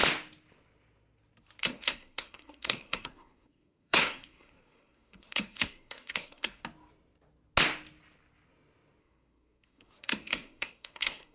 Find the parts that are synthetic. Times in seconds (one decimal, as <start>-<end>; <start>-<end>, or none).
1.6-6.6; 9.0-11.3